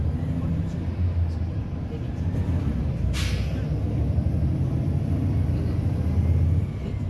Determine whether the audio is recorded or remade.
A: recorded